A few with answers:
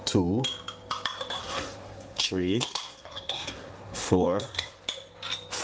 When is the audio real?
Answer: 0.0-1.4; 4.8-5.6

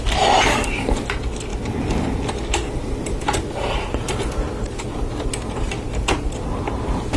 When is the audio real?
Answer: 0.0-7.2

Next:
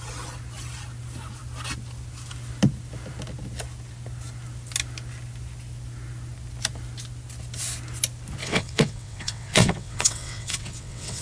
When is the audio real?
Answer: 0.0-8.4

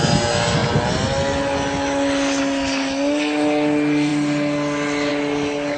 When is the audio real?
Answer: 0.0-5.8

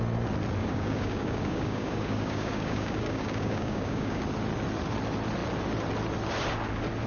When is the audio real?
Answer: 0.0-0.6; 4.2-7.1

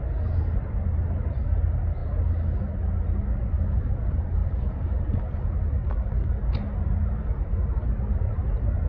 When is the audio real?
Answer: 0.0-8.9

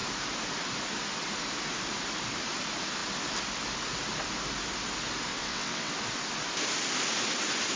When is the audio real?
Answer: 0.0-5.3; 5.9-7.8